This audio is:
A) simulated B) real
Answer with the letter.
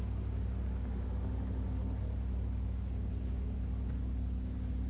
B